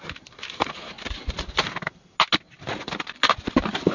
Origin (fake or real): real